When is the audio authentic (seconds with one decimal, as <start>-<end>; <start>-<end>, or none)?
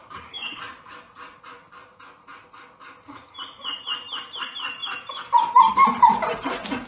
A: 0.6-6.9